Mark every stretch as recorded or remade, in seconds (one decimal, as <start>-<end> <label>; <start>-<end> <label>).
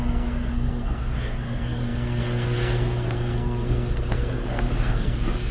0.0-5.5 remade